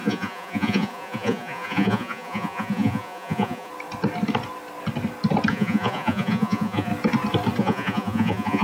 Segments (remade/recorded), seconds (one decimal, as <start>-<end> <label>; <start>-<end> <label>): 0.0-3.7 remade; 3.7-5.5 recorded; 5.5-6.9 remade; 6.9-7.6 recorded; 7.6-8.6 remade